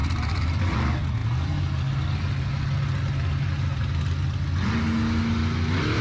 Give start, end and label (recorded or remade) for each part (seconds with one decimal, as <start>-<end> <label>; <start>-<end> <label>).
0.0-0.6 remade; 0.6-6.0 recorded